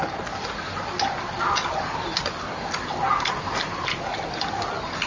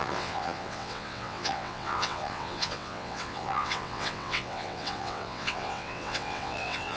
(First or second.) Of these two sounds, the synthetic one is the second